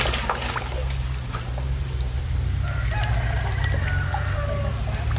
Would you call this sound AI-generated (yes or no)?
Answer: no